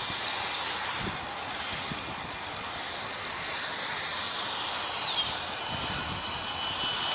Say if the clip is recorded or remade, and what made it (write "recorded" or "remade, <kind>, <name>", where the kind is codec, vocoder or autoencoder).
recorded